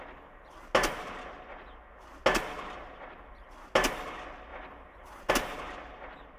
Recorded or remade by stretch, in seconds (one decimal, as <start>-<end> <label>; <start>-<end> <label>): 0.0-6.4 recorded